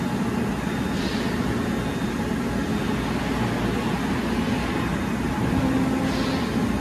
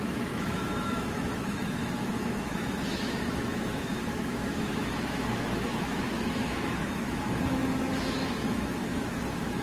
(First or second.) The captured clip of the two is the first